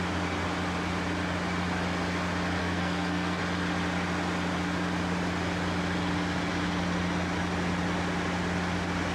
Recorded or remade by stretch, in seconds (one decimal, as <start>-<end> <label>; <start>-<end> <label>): 0.0-2.6 recorded; 2.6-3.4 remade; 3.4-9.1 recorded